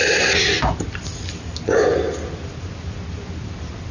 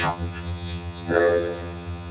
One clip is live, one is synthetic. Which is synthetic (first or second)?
second